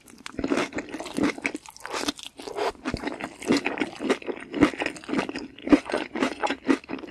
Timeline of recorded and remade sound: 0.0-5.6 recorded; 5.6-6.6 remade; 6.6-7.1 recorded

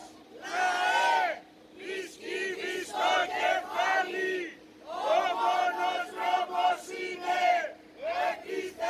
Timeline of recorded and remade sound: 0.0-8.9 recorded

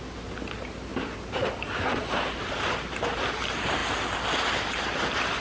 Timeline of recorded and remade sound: 0.0-5.4 recorded

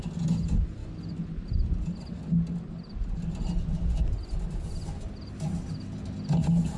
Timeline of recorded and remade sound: 0.0-6.8 recorded

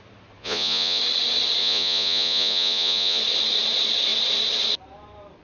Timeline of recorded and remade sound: 0.0-0.4 recorded; 0.4-1.0 remade; 1.0-1.6 recorded; 1.6-3.2 remade; 3.2-5.4 recorded

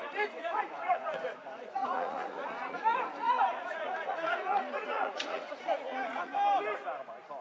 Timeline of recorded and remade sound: 0.0-6.3 remade; 6.3-7.4 recorded